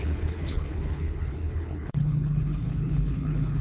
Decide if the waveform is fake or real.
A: fake